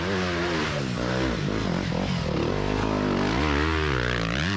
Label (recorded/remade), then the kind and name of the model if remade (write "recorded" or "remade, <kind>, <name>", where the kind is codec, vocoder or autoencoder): recorded